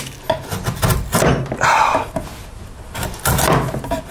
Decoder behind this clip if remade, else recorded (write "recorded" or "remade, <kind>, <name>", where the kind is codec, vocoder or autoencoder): recorded